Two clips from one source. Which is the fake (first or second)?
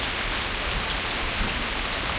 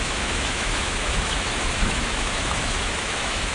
second